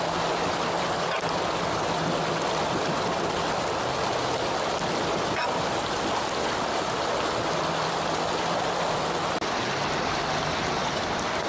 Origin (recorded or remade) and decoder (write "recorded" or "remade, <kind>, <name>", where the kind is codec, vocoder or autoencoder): recorded